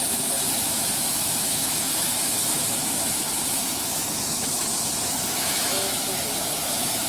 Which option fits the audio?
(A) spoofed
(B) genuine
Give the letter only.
A